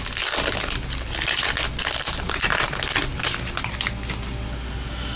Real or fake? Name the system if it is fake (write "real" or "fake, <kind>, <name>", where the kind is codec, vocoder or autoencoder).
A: real